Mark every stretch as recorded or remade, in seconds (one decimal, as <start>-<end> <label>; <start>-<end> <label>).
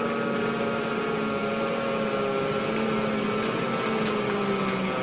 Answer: 0.0-5.0 recorded